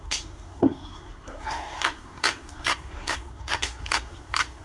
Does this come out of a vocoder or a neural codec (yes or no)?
yes